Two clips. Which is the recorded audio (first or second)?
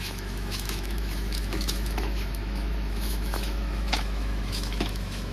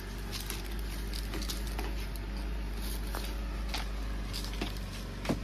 second